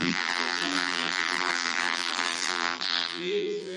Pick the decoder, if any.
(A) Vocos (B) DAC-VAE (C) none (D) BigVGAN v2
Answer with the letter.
D